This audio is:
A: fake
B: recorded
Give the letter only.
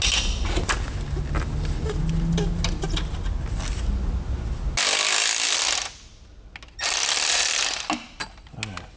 B